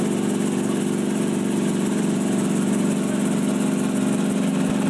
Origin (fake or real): real